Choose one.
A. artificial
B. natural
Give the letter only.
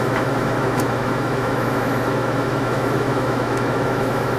A